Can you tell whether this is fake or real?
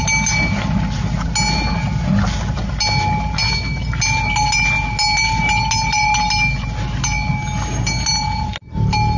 real